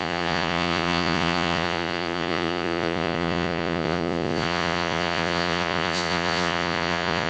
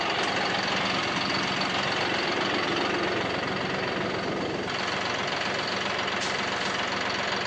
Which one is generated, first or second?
first